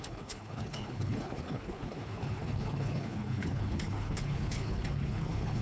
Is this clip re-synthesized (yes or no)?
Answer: yes